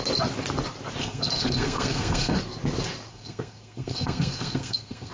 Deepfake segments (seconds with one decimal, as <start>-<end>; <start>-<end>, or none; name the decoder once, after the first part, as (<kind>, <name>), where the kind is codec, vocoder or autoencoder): 1.0-2.3 (codec, SNAC); 3.1-5.1